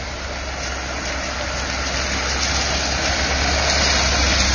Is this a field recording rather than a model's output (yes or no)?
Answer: yes